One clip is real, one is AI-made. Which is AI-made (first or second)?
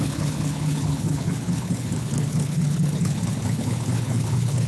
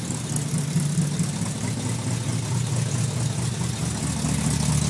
first